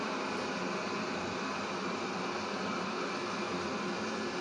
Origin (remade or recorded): recorded